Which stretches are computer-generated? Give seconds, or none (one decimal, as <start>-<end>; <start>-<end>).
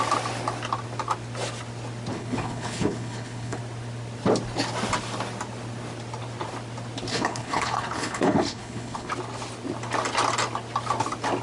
2.1-3.6; 7.1-9.1